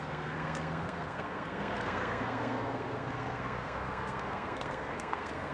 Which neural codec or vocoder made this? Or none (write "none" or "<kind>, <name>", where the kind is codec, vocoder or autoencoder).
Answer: codec, SNAC